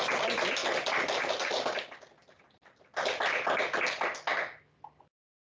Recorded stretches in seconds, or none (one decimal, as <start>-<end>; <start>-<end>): 0.0-5.6